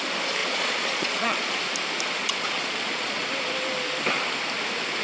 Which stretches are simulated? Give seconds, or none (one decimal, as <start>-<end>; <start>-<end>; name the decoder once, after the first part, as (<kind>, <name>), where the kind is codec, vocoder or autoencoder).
0.4-1.6 (vocoder, Vocos); 2.2-3.3